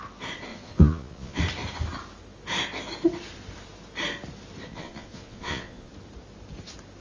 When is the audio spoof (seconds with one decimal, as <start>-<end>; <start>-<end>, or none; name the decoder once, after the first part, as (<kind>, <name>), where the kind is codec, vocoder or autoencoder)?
0.5-1.4 (vocoder, Vocos); 4.7-5.9